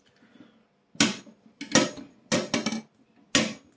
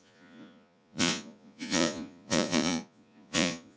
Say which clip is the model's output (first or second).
second